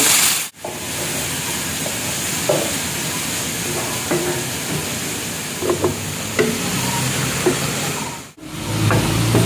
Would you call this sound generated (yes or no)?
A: no